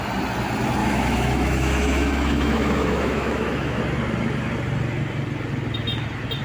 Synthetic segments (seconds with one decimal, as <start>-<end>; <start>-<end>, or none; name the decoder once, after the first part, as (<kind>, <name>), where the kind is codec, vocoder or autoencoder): 0.8-3.8 (autoencoder, DAC-VAE)